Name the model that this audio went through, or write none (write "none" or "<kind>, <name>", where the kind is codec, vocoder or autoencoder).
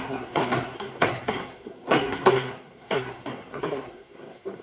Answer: codec, SNAC